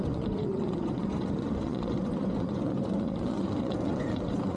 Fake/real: fake